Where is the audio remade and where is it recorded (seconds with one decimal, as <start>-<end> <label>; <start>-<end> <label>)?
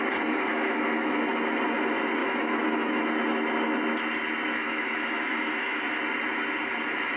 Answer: 0.0-0.5 recorded; 0.5-1.2 remade; 1.2-2.2 recorded; 2.2-3.0 remade; 3.0-4.5 recorded; 4.5-6.0 remade; 6.0-7.2 recorded